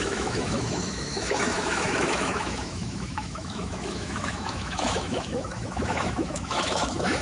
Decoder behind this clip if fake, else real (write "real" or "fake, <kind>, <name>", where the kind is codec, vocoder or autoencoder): fake, autoencoder, DAC-VAE